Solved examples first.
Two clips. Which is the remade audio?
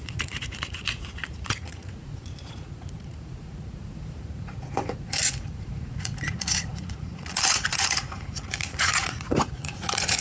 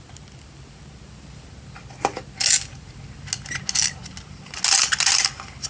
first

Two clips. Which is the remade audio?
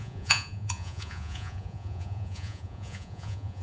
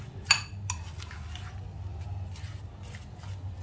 first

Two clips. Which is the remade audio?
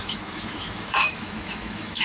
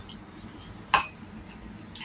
first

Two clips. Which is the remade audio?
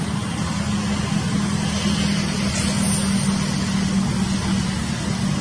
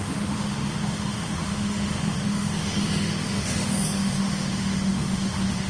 second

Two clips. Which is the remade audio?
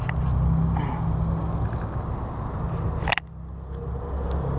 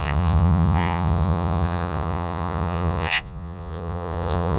second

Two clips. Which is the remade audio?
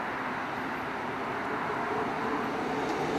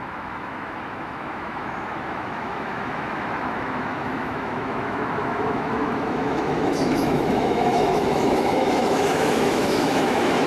second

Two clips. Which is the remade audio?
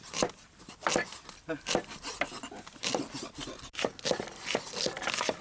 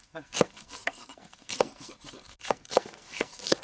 second